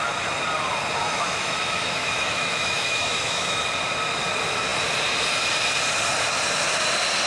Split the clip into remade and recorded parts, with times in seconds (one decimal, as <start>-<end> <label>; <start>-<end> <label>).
0.0-1.0 recorded; 1.0-3.6 remade; 3.6-7.3 recorded